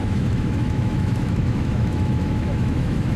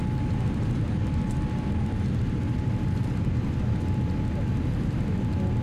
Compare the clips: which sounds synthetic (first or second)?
first